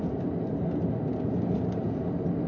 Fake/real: real